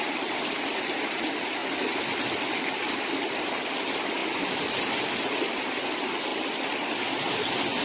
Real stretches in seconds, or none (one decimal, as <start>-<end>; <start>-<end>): 0.0-7.8